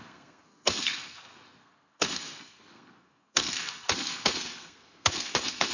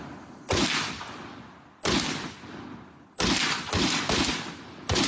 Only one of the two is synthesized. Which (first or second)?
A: first